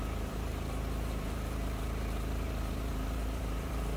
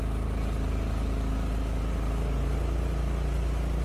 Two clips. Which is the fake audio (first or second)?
first